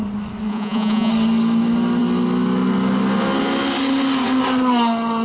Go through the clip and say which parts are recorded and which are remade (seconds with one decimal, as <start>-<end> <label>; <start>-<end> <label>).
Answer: 0.0-0.5 recorded; 0.5-1.1 remade; 1.1-5.2 recorded

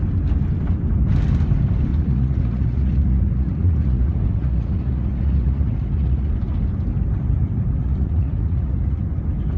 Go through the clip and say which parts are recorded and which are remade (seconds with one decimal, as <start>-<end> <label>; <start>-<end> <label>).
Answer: 0.0-1.9 recorded; 1.9-6.3 remade; 6.3-7.8 recorded; 7.8-9.0 remade; 9.0-9.6 recorded

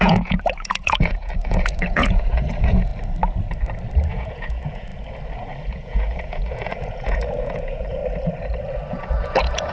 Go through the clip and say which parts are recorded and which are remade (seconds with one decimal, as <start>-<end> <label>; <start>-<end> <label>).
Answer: 0.0-2.9 remade; 2.9-4.1 recorded; 4.1-4.9 remade; 4.9-5.7 recorded; 5.7-8.0 remade; 8.0-8.9 recorded; 8.9-9.7 remade

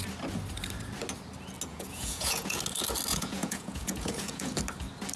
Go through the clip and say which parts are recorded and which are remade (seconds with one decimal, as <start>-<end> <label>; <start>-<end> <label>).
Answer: 0.0-1.7 recorded; 1.7-2.6 remade; 2.6-3.1 recorded; 3.1-4.5 remade; 4.5-5.2 recorded

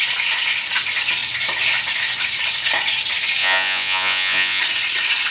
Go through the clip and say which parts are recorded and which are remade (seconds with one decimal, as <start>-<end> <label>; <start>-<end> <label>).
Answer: 0.0-3.4 recorded; 3.4-4.6 remade; 4.6-5.3 recorded